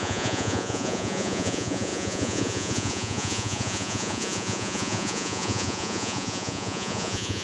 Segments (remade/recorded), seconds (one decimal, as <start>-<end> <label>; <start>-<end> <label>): 0.0-7.4 remade